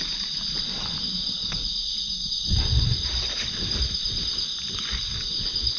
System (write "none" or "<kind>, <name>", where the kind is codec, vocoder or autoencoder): none